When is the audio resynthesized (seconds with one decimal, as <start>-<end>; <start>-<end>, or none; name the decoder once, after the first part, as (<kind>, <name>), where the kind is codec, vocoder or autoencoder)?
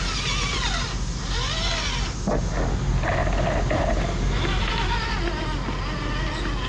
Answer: none